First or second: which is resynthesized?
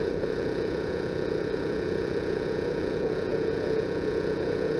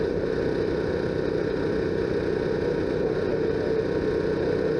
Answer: first